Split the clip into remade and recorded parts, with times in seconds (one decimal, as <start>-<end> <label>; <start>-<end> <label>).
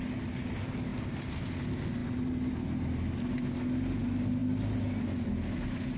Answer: 0.0-6.0 recorded